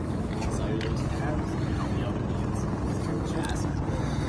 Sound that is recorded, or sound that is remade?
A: recorded